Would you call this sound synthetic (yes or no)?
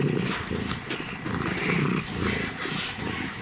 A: no